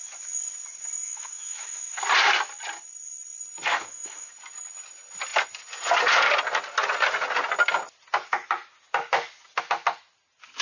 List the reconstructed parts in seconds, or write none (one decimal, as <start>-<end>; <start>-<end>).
1.0-2.0; 3.7-4.3